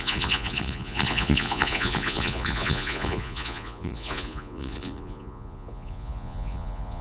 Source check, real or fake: fake